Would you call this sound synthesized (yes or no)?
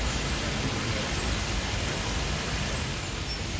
no